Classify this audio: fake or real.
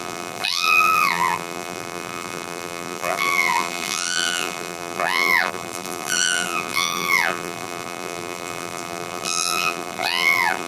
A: fake